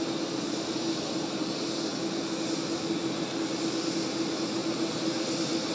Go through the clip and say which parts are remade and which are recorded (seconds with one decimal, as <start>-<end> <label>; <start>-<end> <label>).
0.0-5.7 recorded